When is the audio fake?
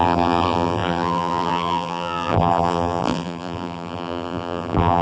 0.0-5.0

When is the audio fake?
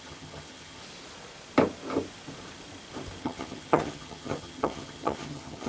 0.0-0.8; 3.2-5.7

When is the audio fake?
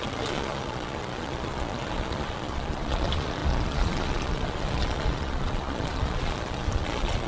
0.0-7.3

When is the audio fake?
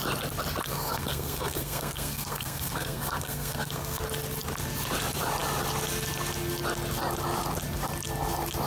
0.7-4.0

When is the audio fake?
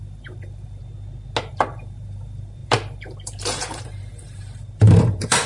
0.0-0.8; 1.5-5.5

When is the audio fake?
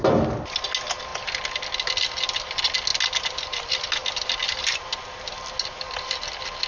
none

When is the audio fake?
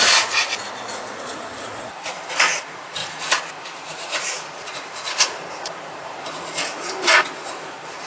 0.0-0.4; 0.9-8.1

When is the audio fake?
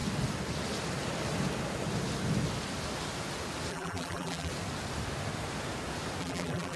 3.7-4.5; 6.2-6.8